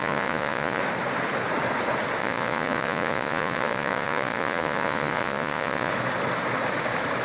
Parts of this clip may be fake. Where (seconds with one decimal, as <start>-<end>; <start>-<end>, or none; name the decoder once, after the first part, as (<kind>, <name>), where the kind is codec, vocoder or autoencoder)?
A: 0.0-0.8 (vocoder, Vocos); 2.2-5.9